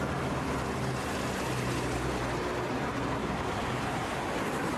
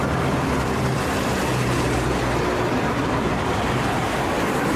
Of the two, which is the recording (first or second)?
first